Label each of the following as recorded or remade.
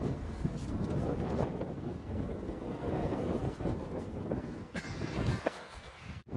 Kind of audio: remade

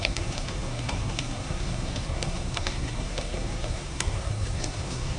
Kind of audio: remade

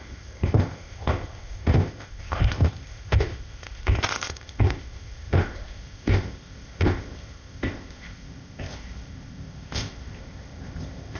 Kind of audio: remade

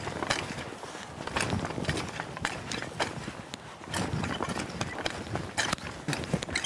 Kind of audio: recorded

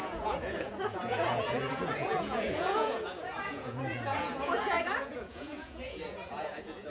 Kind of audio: remade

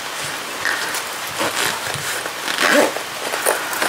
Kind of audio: recorded